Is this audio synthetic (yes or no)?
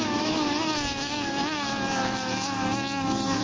yes